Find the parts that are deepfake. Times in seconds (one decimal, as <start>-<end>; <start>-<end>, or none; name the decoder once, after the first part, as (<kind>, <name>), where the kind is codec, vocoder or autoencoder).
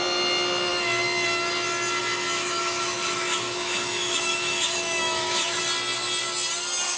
2.4-5.6 (autoencoder, DAC-VAE)